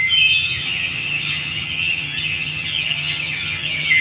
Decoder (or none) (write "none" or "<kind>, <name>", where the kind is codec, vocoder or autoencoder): vocoder, HiFi-GAN